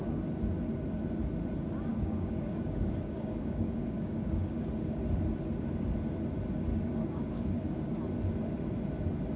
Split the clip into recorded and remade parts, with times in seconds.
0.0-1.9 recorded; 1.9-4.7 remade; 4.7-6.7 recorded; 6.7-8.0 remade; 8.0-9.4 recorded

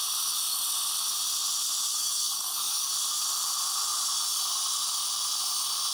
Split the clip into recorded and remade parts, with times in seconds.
0.0-1.9 recorded; 1.9-2.9 remade; 2.9-5.9 recorded

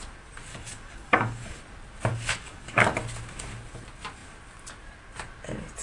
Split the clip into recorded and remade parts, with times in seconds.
0.0-0.5 recorded; 0.5-1.6 remade; 1.6-2.1 recorded; 2.1-3.0 remade; 3.0-5.8 recorded

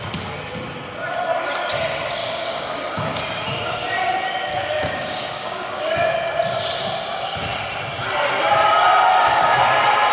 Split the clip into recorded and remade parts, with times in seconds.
0.0-2.2 recorded; 2.2-3.2 remade; 3.2-4.5 recorded; 4.5-6.3 remade; 6.3-10.1 recorded

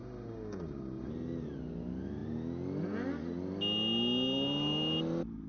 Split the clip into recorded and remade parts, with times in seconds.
0.0-1.1 remade; 1.1-5.5 recorded

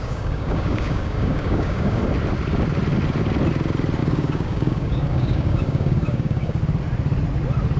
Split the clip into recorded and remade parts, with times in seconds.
0.0-2.0 remade; 2.0-4.0 recorded; 4.0-6.6 remade; 6.6-7.8 recorded